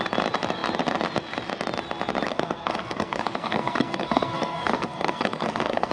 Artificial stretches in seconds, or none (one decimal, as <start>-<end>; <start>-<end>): 2.3-5.9